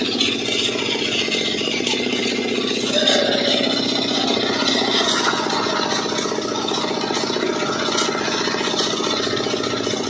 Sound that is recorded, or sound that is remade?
remade